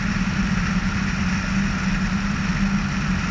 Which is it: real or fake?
real